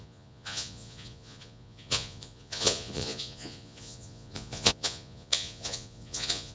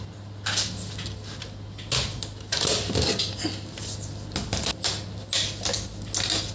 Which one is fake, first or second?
first